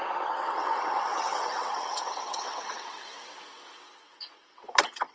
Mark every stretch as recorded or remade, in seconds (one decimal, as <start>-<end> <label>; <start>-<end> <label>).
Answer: 0.0-5.1 remade